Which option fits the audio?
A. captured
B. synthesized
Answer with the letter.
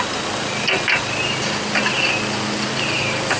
A